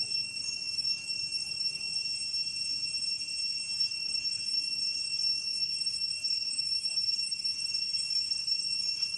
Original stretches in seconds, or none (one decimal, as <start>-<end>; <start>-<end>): 2.0-3.8